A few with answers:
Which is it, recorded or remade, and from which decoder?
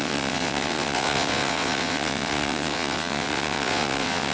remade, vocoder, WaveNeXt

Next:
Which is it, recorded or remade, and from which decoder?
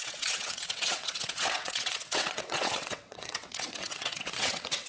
remade, vocoder, WaveNeXt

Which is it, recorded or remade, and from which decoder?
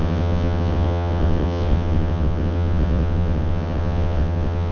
remade, vocoder, WaveNeXt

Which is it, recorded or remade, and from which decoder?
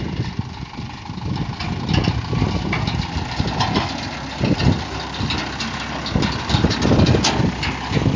recorded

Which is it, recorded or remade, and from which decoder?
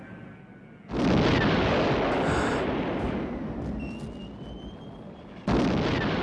recorded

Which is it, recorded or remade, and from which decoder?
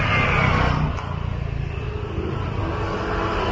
recorded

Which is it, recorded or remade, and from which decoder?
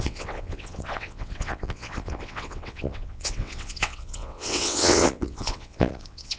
remade, vocoder, WaveNeXt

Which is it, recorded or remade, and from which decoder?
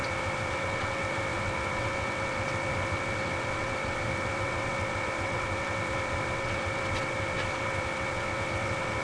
remade, vocoder, WaveNeXt